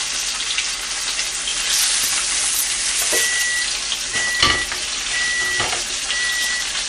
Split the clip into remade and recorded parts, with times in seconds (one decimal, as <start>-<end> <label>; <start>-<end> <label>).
0.0-6.9 recorded